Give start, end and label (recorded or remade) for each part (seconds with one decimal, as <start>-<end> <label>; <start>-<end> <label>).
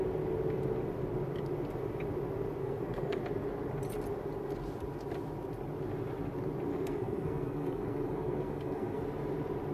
0.0-2.6 recorded; 2.6-3.2 remade; 3.2-6.7 recorded; 6.7-9.0 remade; 9.0-9.7 recorded